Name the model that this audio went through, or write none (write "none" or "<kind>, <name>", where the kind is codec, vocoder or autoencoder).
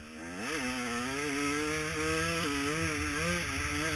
none